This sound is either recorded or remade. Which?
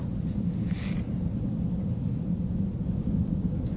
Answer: recorded